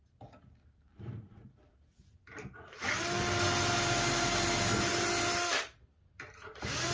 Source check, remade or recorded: recorded